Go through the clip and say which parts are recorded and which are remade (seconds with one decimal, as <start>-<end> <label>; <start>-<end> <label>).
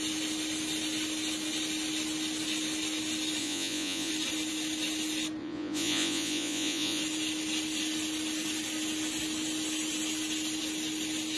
0.0-3.4 recorded; 3.4-4.1 remade; 4.1-5.4 recorded; 5.4-7.0 remade; 7.0-11.4 recorded